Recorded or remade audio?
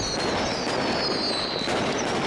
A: recorded